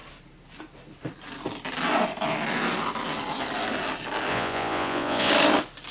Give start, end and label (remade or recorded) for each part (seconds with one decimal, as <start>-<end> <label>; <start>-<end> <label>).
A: 0.0-4.3 recorded; 4.3-5.3 remade; 5.3-5.9 recorded